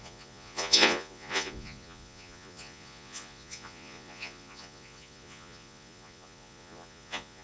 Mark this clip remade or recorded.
remade